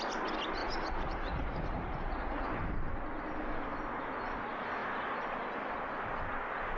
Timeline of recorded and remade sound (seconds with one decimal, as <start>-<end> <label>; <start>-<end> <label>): 0.0-0.6 recorded; 0.6-2.5 remade; 2.5-6.8 recorded